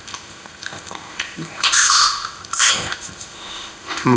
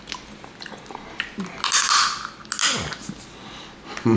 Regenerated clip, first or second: first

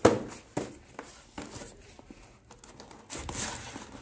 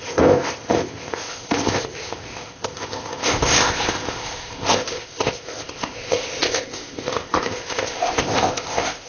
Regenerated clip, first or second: second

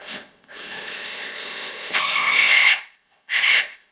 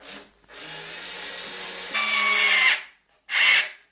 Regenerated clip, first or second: first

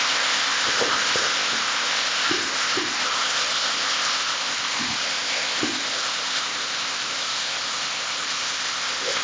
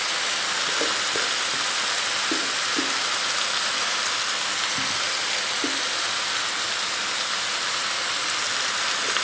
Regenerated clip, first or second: first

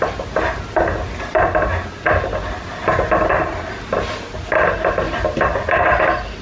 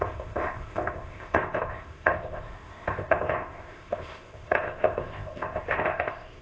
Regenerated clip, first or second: second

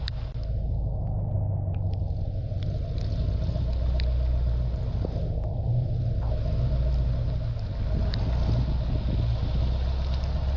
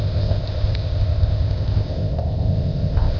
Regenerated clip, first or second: second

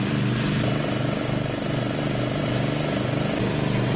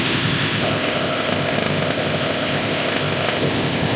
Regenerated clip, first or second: second